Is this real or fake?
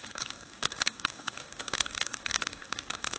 fake